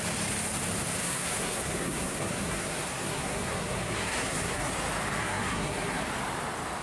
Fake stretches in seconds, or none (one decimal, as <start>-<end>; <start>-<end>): 1.0-4.7; 5.2-6.0